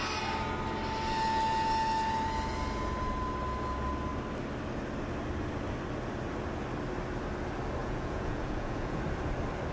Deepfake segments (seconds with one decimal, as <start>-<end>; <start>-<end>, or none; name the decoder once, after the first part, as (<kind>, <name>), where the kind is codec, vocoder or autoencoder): 7.8-9.0 (vocoder, Vocos)

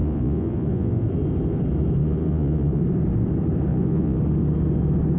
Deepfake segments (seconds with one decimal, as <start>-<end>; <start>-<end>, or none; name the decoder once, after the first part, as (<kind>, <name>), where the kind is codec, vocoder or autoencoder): 0.0-1.0 (vocoder, Vocos); 2.0-2.8; 3.7-4.2

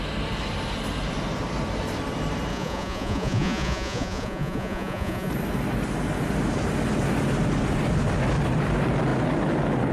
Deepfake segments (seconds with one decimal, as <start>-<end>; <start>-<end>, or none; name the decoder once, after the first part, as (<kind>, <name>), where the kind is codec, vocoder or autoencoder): 2.5-5.3 (vocoder, Vocos)

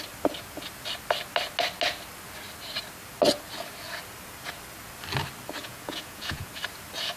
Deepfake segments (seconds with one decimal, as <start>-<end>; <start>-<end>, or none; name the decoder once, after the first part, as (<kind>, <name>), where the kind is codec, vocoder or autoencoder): 5.6-6.5 (vocoder, Vocos)

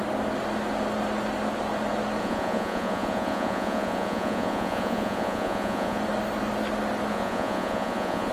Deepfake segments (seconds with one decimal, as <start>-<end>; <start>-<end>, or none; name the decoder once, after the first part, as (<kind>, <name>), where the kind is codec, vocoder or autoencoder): 2.2-6.0 (vocoder, Vocos); 7.1-8.3

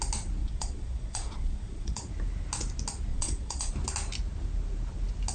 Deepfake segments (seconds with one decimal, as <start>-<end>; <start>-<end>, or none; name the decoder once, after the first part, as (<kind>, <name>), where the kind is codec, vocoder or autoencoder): 0.4-2.1 (vocoder, Vocos); 3.1-3.7

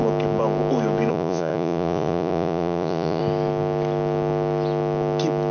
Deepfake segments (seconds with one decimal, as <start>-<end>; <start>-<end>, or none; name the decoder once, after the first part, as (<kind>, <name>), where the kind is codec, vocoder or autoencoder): 1.1-3.2 (vocoder, Vocos)